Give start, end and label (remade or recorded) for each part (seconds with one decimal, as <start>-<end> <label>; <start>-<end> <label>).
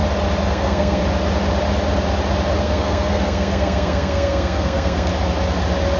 0.0-0.5 recorded; 0.5-1.0 remade; 1.0-2.6 recorded; 2.6-5.1 remade; 5.1-6.0 recorded